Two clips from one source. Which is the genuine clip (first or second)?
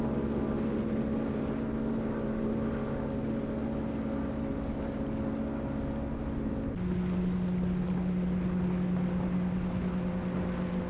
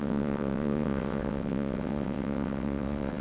first